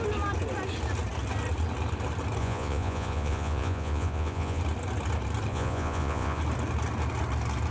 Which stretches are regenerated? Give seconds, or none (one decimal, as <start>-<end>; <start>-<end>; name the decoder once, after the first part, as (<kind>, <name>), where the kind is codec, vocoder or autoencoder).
2.4-4.6 (vocoder, Vocos); 5.5-6.4